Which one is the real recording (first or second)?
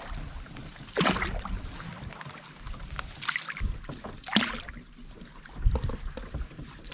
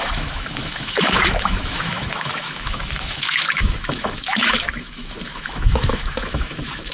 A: first